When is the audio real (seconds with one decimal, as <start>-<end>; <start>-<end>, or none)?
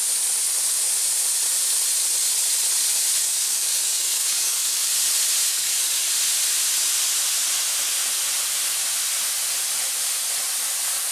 0.0-3.2; 4.9-5.5; 6.1-11.1